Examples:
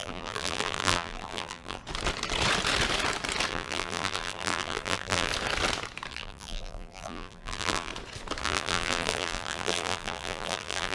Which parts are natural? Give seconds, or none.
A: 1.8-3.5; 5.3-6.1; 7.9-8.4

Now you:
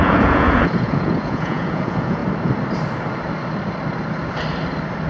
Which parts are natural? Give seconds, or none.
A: 2.2-5.1

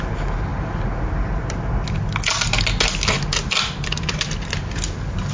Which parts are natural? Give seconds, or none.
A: 0.0-5.3